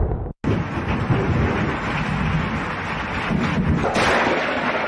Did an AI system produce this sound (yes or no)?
no